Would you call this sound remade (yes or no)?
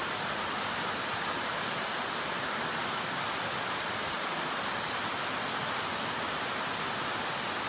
no